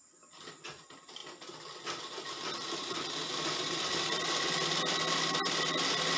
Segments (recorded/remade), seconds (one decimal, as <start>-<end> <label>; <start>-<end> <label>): 0.0-6.2 recorded